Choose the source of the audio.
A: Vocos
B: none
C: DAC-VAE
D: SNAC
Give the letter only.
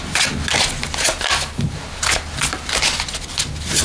B